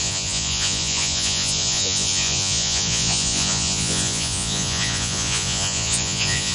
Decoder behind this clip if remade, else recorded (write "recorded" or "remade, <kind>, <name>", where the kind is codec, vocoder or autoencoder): remade, vocoder, Vocos